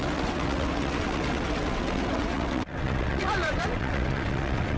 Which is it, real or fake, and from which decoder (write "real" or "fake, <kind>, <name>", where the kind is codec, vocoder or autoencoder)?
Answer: fake, vocoder, WaveNeXt